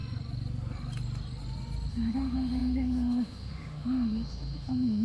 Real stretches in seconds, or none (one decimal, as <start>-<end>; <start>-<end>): 0.0-1.9